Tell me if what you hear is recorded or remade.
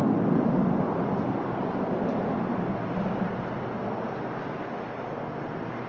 recorded